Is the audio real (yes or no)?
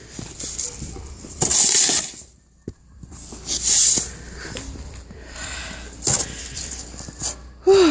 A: yes